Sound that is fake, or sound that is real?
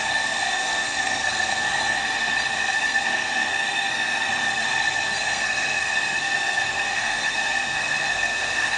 fake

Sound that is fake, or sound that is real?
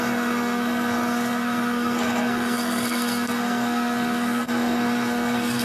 fake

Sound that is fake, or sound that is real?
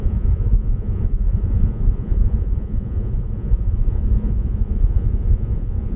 fake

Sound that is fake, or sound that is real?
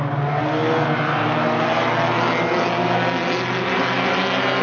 real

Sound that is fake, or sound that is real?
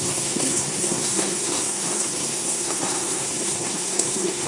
fake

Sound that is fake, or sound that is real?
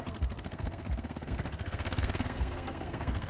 fake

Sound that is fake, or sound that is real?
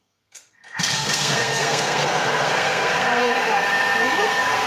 fake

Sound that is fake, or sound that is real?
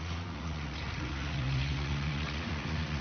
fake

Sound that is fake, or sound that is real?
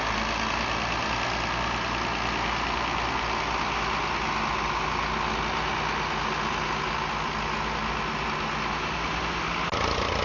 real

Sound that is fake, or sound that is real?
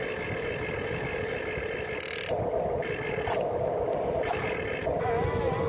real